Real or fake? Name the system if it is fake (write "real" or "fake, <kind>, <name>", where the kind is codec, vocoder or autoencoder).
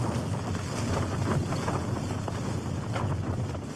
real